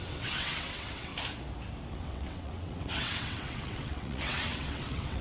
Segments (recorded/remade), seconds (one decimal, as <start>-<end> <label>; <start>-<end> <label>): 0.0-1.1 remade; 1.1-1.9 recorded; 1.9-5.2 remade